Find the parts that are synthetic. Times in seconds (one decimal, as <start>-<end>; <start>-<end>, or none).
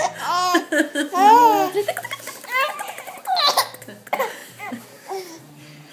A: 4.4-5.9